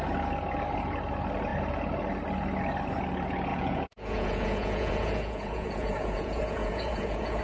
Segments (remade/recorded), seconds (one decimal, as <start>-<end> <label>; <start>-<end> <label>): 0.0-3.5 recorded; 3.5-7.4 remade